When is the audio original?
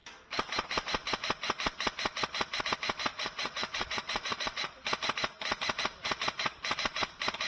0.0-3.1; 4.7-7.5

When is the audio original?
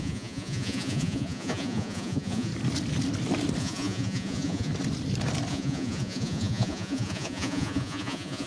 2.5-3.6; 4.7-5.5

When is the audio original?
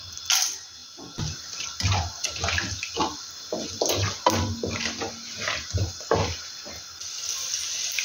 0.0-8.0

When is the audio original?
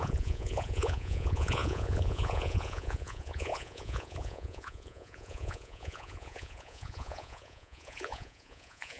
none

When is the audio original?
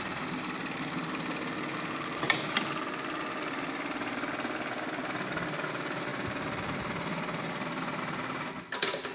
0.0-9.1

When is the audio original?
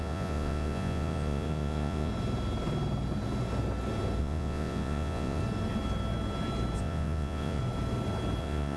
2.1-4.2; 5.4-6.8; 7.6-8.4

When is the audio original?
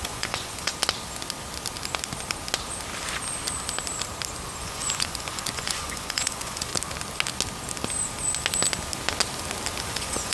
0.7-4.6; 6.7-9.8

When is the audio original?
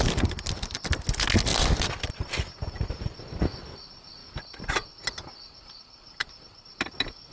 0.0-7.3